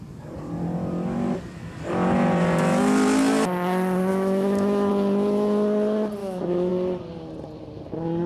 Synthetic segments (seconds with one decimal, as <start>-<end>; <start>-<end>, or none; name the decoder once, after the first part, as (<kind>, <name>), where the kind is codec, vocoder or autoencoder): 4.1-4.9 (autoencoder, DAC-VAE); 6.2-6.7